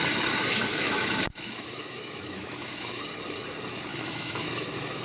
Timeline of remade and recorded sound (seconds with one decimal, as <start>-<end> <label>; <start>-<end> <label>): 0.0-0.7 recorded; 0.7-3.0 remade; 3.0-3.9 recorded; 3.9-5.0 remade